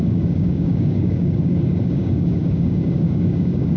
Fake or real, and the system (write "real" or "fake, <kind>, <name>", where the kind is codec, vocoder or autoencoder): fake, codec, DAC